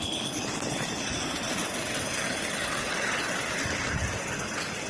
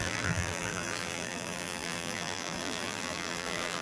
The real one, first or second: first